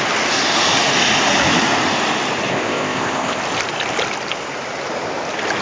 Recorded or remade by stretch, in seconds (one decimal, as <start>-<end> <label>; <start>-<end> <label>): 0.0-2.5 recorded; 2.5-3.4 remade; 3.4-5.6 recorded